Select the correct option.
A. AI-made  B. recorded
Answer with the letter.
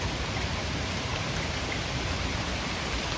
B